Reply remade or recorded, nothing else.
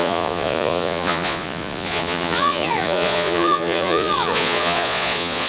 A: remade